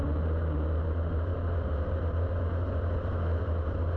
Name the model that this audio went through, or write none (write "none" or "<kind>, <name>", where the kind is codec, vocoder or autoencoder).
none